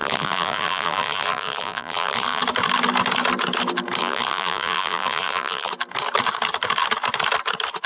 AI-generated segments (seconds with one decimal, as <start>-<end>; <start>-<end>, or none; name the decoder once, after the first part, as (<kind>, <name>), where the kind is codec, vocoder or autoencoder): 0.0-2.4 (vocoder, BigVGAN v2); 4.0-5.7